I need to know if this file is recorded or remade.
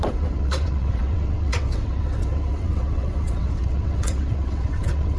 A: remade